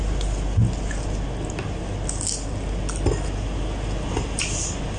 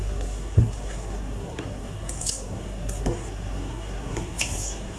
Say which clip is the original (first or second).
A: first